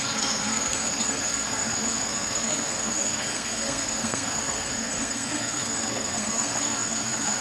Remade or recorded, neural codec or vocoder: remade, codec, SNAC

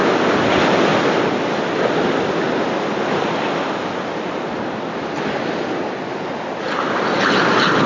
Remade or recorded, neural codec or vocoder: recorded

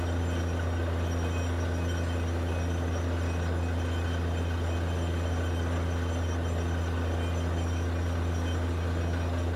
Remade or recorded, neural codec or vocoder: recorded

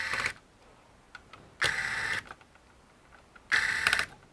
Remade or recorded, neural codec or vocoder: recorded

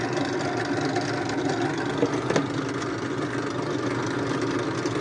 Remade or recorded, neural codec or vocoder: recorded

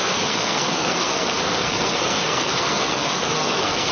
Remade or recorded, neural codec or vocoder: remade, codec, SNAC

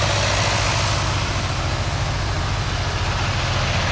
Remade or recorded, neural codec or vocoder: recorded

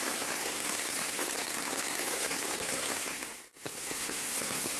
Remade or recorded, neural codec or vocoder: remade, codec, SNAC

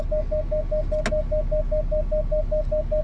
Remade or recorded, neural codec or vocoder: recorded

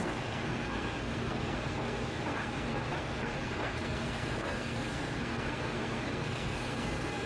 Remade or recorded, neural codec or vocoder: remade, codec, SNAC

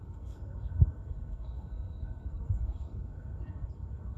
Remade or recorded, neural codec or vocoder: remade, codec, SNAC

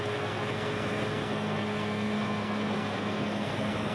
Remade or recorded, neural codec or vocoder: remade, codec, SNAC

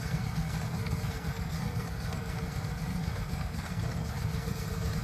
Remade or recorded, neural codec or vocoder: remade, codec, SNAC